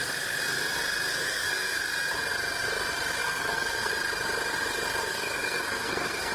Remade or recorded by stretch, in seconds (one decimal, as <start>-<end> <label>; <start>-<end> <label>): 0.0-1.1 recorded; 1.1-1.8 remade; 1.8-3.2 recorded; 3.2-3.9 remade; 3.9-5.1 recorded; 5.1-6.3 remade